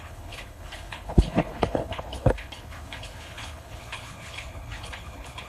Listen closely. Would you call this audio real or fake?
fake